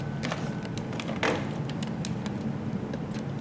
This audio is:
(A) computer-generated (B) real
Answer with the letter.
B